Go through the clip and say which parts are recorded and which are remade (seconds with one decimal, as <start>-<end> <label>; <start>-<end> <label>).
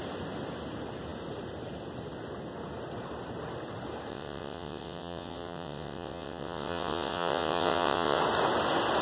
0.0-4.1 recorded; 4.1-8.2 remade; 8.2-9.0 recorded